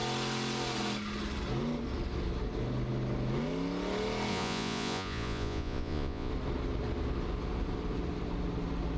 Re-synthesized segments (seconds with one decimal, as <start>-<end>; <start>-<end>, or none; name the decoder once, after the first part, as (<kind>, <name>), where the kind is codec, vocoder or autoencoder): 4.3-6.3 (vocoder, Vocos)